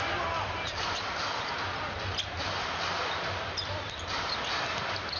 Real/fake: real